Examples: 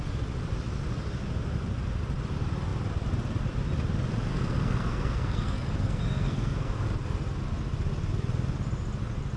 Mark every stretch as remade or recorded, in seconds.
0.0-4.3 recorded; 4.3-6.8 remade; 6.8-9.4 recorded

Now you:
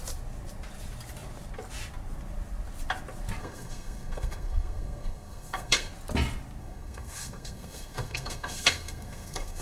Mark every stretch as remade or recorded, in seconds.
0.0-3.4 recorded; 3.4-5.9 remade; 5.9-6.6 recorded; 6.6-9.6 remade